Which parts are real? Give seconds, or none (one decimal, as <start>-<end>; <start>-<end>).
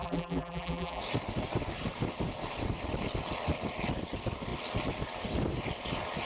1.0-6.2